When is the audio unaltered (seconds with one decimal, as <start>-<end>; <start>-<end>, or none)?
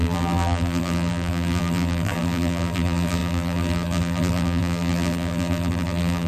none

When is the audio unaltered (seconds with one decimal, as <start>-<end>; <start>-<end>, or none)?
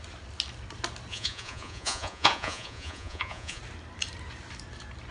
0.0-1.1; 3.6-5.1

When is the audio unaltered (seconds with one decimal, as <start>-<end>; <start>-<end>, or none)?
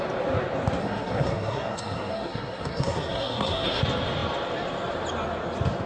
0.0-0.8; 3.8-5.9